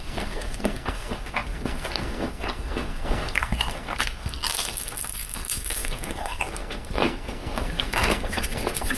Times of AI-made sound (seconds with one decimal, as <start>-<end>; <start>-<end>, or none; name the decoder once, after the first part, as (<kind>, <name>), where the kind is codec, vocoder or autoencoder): 0.0-9.0 (codec, SNAC)